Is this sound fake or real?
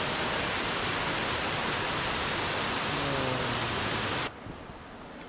real